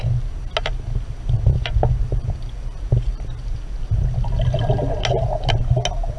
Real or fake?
real